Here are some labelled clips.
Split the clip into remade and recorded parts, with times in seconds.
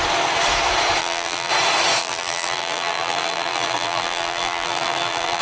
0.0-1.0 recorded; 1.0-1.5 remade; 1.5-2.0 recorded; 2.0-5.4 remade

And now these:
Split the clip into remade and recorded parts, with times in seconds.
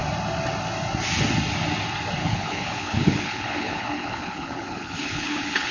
0.0-2.2 recorded; 2.2-5.7 remade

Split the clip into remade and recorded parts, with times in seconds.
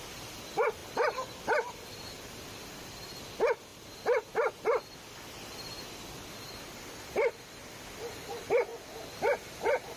0.0-3.7 remade; 3.7-6.3 recorded; 6.3-8.7 remade; 8.7-9.6 recorded; 9.6-10.0 remade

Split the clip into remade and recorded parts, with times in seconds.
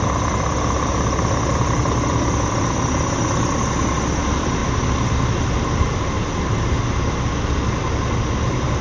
0.0-8.8 recorded